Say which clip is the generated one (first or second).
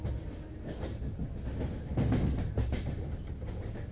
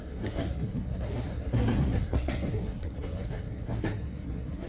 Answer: second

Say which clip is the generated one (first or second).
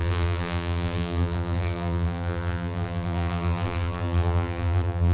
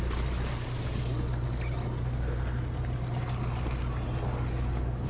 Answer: first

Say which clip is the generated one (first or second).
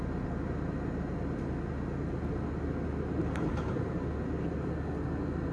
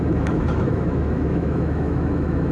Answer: second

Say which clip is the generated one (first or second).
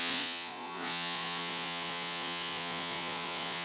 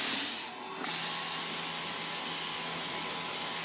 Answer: first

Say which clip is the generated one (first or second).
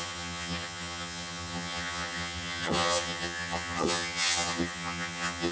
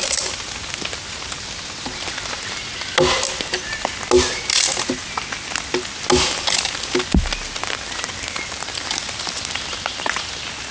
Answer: first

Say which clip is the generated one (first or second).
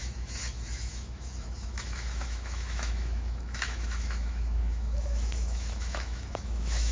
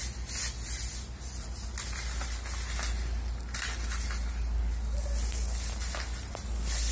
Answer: first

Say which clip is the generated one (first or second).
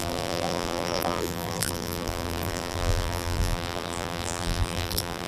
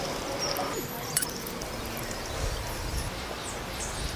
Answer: first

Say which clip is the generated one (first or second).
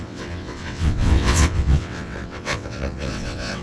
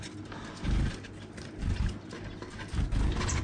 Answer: first